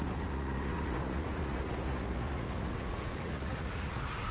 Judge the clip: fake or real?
fake